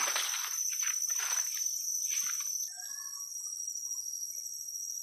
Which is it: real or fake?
real